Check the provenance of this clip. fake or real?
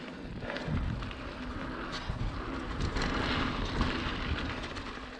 real